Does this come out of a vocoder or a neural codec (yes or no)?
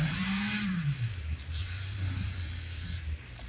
yes